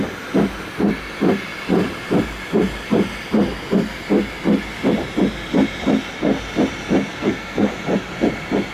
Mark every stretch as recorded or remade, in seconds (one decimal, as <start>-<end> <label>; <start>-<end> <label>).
0.0-7.1 recorded; 7.1-7.7 remade; 7.7-8.7 recorded